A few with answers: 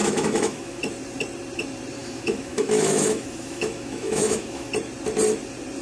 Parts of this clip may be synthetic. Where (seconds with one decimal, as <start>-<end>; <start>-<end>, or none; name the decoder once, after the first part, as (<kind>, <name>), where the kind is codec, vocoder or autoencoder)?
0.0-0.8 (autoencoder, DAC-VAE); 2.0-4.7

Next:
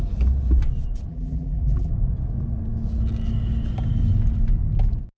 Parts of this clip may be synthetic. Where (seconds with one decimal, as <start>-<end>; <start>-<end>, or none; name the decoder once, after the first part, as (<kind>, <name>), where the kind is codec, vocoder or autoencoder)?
1.1-1.9 (vocoder, BigVGAN v2)

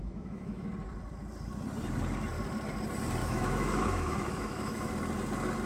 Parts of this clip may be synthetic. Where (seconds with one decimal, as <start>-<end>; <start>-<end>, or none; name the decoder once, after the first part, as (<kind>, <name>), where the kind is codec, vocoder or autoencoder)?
0.0-0.7 (autoencoder, DAC-VAE); 3.2-4.9

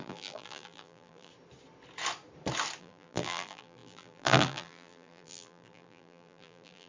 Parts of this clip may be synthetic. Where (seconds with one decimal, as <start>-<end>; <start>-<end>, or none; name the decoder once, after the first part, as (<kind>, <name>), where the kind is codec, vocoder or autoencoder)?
0.0-1.3 (vocoder, BigVGAN v2); 2.8-6.9